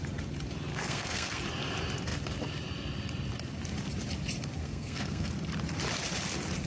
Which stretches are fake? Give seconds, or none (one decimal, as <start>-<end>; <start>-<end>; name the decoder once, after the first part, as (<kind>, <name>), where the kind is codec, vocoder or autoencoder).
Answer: 0.7-1.4 (codec, SNAC); 4.6-5.3